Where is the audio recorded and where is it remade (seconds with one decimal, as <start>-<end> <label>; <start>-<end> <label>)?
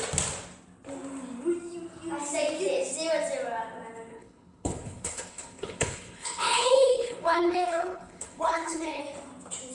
0.0-4.1 recorded; 4.1-9.0 remade; 9.0-9.7 recorded